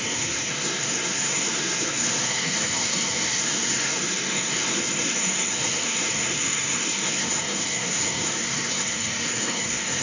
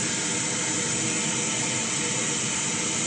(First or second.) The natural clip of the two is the second